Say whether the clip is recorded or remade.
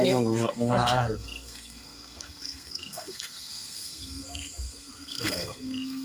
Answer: remade